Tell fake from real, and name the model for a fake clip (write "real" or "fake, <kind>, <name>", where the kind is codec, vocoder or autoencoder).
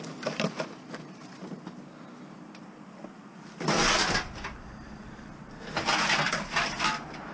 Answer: real